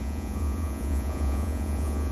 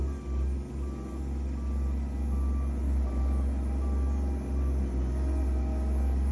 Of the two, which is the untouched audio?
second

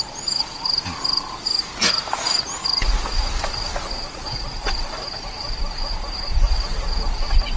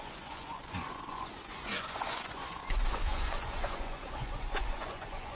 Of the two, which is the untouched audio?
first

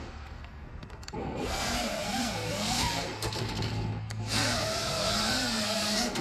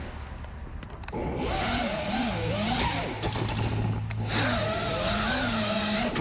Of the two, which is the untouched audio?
second